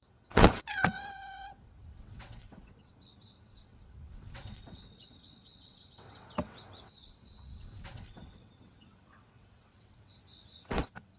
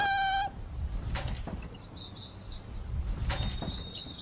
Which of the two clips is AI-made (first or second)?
first